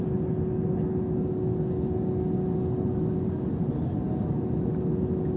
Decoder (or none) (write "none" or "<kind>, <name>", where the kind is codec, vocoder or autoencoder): none